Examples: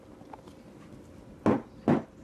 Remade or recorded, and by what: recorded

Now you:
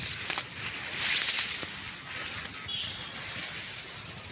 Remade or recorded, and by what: recorded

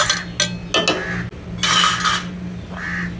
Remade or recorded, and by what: recorded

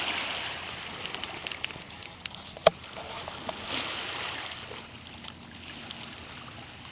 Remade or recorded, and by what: recorded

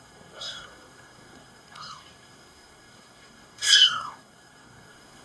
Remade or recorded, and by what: remade, codec, SNAC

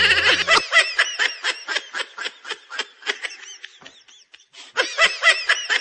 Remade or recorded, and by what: recorded